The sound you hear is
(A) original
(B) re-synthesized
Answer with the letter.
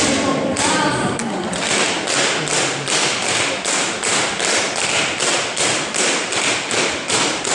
A